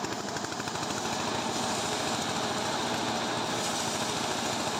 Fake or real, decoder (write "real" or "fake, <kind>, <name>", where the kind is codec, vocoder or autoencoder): real